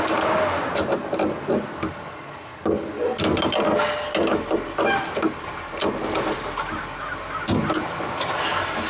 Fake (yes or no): no